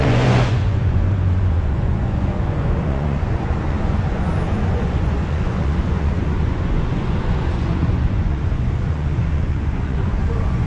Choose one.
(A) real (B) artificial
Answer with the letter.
B